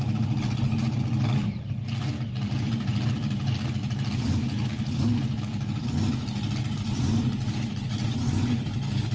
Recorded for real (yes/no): yes